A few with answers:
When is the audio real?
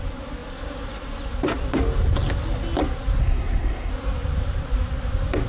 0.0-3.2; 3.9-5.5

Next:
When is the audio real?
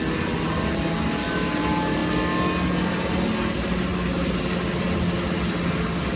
0.0-6.2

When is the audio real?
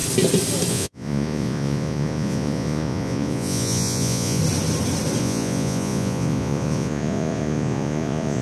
0.0-0.7; 4.4-5.2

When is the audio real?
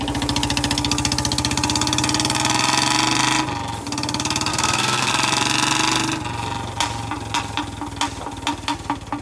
0.0-4.5; 5.1-9.2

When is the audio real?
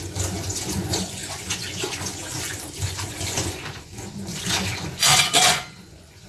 none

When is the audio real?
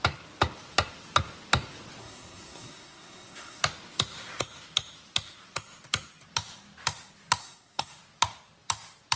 0.0-2.0; 3.6-7.4; 7.9-9.2